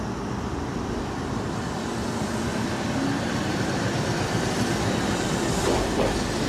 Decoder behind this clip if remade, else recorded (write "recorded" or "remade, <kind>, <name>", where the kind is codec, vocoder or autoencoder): recorded